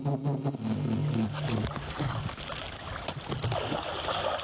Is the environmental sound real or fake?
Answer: real